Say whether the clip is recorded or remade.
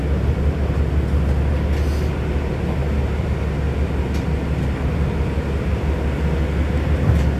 recorded